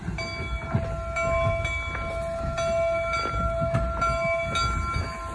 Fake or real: real